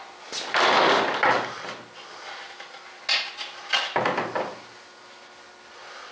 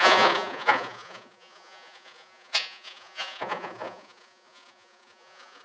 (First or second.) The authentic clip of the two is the first